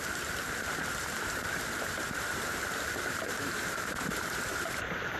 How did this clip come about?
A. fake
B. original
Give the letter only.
A